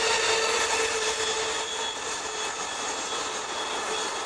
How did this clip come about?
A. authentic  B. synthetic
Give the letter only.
A